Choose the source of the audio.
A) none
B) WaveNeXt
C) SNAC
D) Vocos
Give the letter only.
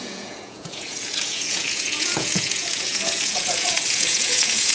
D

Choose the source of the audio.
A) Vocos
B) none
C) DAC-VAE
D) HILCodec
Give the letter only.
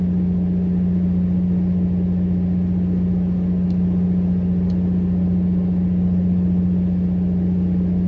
B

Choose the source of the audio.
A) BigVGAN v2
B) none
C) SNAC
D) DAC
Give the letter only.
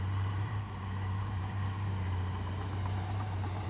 A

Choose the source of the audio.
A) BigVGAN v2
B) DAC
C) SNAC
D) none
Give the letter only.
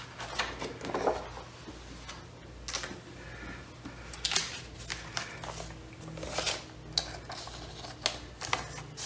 D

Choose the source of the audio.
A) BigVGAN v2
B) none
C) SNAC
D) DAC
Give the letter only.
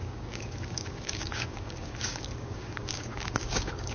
D